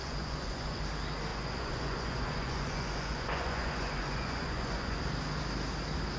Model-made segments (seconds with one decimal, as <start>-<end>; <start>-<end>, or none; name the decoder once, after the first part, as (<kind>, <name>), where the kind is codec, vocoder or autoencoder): 0.0-0.8 (vocoder, Vocos); 1.3-5.0